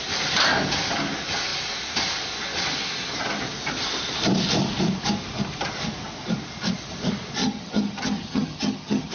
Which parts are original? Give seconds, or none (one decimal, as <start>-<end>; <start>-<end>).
0.0-7.4